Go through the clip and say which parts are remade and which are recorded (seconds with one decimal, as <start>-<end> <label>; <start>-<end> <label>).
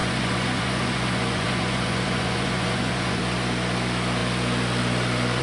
0.0-3.2 remade; 3.2-5.4 recorded